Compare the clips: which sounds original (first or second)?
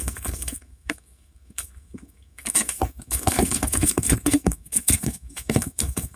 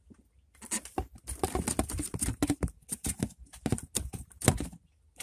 second